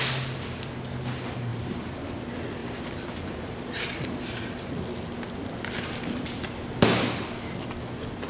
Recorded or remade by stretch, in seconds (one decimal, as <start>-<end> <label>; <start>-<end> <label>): 0.0-1.5 recorded; 1.5-2.0 remade; 2.0-2.6 recorded; 2.6-4.8 remade; 4.8-8.3 recorded